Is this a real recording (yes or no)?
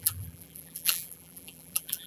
no